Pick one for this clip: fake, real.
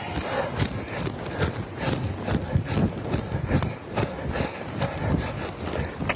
real